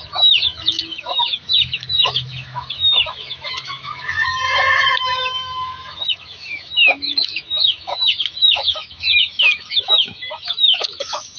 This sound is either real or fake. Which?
fake